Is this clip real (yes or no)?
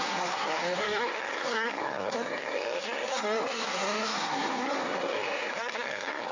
no